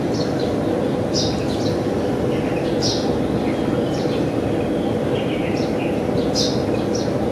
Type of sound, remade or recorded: recorded